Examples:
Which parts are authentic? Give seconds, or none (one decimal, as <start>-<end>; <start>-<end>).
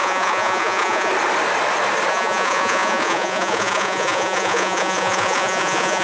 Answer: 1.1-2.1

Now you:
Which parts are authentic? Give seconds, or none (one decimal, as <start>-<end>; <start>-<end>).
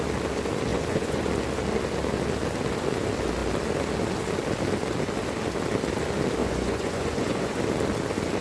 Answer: 0.0-0.7; 1.3-6.4; 7.6-8.4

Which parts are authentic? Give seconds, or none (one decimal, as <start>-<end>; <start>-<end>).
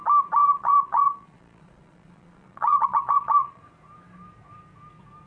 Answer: 0.0-0.4; 3.6-5.3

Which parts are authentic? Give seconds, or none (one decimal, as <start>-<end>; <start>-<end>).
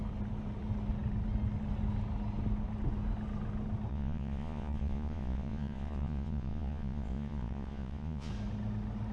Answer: 0.0-3.9; 8.3-9.1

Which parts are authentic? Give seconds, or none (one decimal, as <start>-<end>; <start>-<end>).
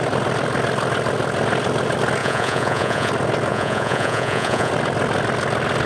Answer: 0.0-2.2; 3.1-3.5; 4.7-5.9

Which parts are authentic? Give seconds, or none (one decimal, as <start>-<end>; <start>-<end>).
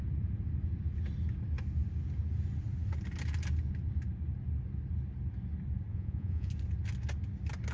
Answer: 0.0-5.9; 6.5-7.7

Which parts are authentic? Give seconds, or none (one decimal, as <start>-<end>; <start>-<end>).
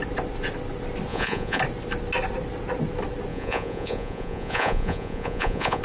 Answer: 0.0-1.1; 1.6-3.3